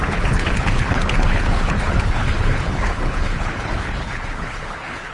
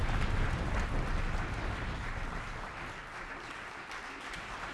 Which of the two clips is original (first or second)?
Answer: second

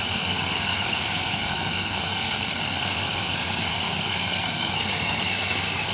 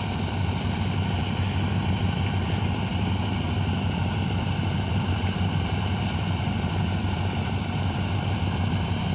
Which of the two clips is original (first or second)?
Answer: second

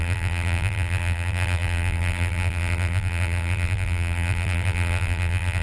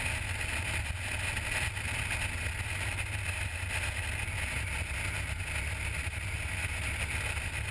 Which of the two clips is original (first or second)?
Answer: second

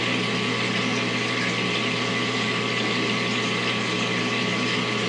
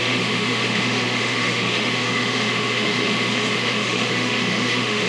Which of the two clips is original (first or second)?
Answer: first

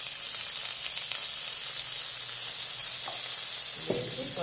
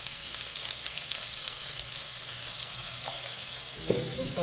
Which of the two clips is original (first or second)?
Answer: first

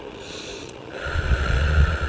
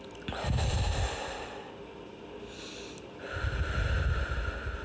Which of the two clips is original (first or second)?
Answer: second